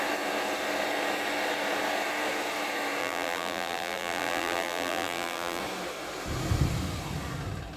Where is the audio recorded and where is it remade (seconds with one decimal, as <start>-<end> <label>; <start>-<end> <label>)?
0.0-3.0 recorded; 3.0-5.6 remade; 5.6-7.8 recorded